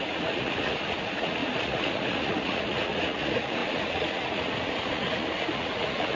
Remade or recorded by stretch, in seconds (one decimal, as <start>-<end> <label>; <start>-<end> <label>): 0.0-6.1 remade